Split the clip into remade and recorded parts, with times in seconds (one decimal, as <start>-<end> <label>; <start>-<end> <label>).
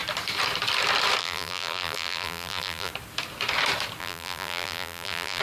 0.0-1.2 recorded; 1.2-2.9 remade; 2.9-4.0 recorded; 4.0-5.4 remade